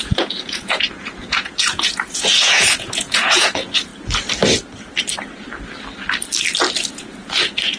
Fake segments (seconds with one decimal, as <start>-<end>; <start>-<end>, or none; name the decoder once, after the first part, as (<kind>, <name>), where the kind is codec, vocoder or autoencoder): 0.0-3.9 (vocoder, Vocos); 6.9-7.8